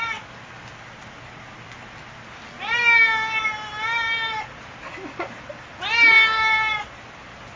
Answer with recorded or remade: recorded